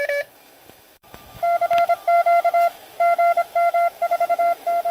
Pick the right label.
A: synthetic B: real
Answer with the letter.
A